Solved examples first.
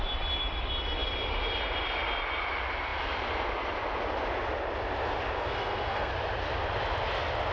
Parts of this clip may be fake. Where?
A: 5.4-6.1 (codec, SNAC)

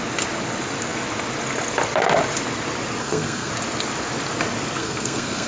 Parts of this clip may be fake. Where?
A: 3.0-3.5 (codec, SNAC); 4.8-5.5

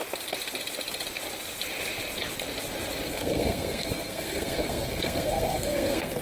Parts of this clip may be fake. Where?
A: 3.1-6.2 (codec, SNAC)